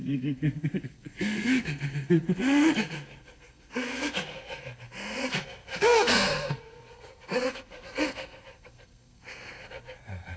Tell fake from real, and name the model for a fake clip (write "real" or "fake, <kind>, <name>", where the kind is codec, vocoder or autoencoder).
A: fake, codec, SNAC